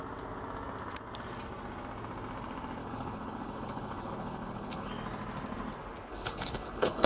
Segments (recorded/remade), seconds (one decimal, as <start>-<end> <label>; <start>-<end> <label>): 0.0-2.8 recorded; 2.8-4.9 remade; 4.9-6.1 recorded; 6.1-7.1 remade